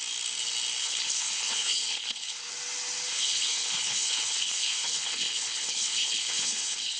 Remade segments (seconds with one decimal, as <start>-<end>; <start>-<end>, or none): 0.8-2.5; 3.1-7.0